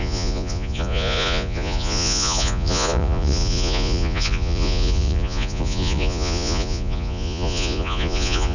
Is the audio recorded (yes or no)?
no